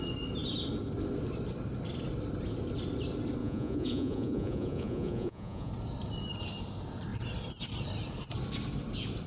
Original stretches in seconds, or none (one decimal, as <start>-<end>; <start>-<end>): 0.0-3.4; 5.7-9.3

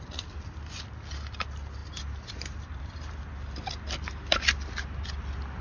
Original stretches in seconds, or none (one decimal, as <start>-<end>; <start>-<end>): 0.0-1.8; 3.2-5.6

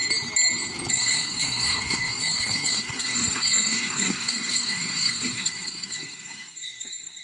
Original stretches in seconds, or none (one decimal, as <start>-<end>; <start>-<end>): 0.0-0.9

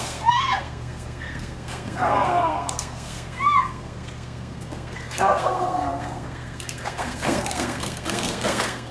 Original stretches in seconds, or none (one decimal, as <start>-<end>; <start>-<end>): none

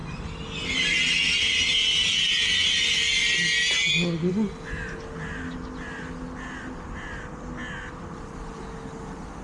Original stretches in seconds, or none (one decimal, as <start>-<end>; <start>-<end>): 0.0-9.4

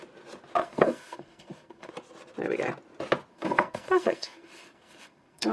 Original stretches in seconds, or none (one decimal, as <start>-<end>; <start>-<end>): 0.0-0.6; 1.9-3.3

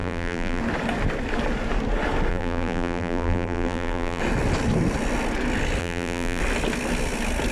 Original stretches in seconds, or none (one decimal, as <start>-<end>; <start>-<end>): 0.6-2.3; 4.2-5.8; 6.4-7.5

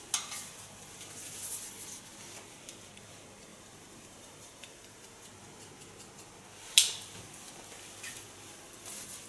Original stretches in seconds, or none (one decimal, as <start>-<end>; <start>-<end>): 0.0-3.5; 5.3-9.3